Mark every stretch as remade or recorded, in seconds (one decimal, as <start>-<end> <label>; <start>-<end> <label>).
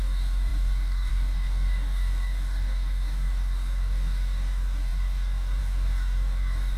0.0-6.8 remade